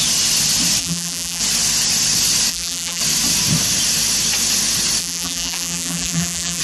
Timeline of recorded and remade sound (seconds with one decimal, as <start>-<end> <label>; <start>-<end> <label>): 0.0-0.8 recorded; 0.8-1.4 remade; 1.4-2.5 recorded; 2.5-3.0 remade; 3.0-5.0 recorded; 5.0-6.6 remade